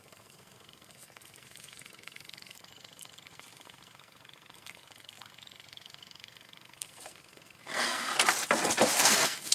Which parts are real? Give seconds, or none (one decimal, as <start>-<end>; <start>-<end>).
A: 8.1-8.9